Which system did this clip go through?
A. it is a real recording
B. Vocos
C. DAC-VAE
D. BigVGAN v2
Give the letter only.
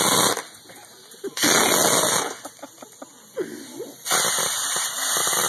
A